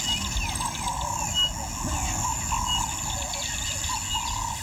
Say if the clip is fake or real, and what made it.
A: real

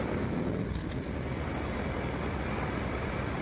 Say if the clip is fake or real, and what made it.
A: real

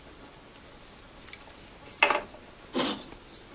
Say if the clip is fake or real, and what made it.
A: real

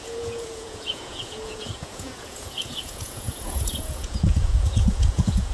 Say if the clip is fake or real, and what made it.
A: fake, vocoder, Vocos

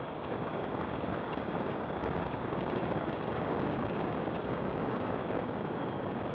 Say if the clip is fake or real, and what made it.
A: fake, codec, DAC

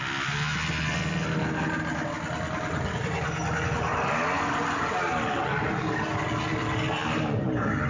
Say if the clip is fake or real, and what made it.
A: real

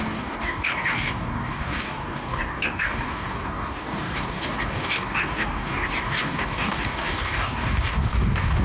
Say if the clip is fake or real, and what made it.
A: fake, codec, DAC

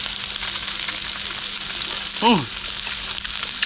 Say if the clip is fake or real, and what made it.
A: real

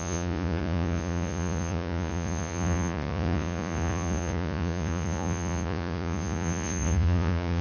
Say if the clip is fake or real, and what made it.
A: fake, vocoder, Vocos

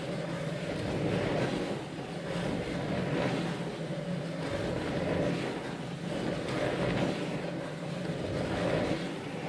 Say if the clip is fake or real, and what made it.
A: real